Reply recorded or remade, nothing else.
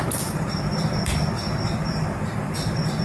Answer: remade